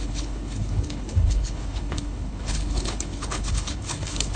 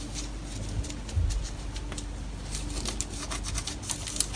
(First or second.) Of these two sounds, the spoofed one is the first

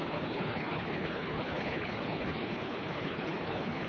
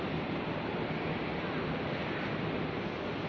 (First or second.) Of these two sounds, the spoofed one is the first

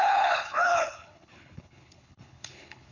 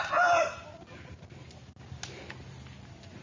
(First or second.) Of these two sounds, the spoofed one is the first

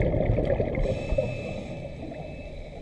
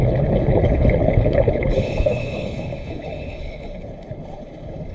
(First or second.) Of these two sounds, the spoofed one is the second